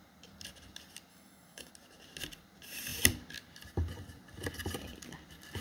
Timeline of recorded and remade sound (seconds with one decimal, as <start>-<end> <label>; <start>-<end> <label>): 0.0-1.1 recorded; 1.1-1.7 remade; 1.7-5.6 recorded